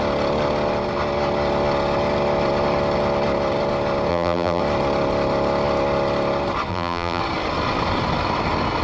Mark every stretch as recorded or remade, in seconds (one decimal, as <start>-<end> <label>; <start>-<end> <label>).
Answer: 0.0-4.1 recorded; 4.1-4.6 remade; 4.6-6.7 recorded; 6.7-7.2 remade; 7.2-8.8 recorded